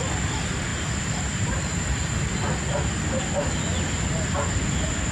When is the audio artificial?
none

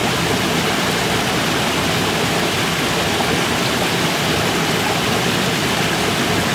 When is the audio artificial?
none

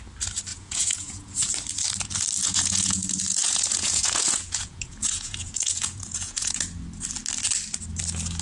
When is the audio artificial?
0.5-1.5 (vocoder, Vocos); 2.4-6.6

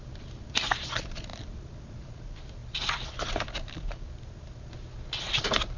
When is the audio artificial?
none